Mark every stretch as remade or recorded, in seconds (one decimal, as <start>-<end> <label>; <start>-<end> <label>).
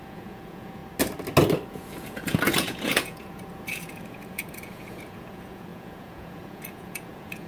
0.0-0.8 remade; 0.8-1.7 recorded; 1.7-7.5 remade